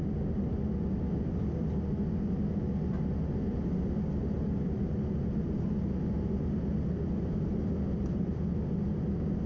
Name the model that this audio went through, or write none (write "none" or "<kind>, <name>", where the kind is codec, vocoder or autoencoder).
none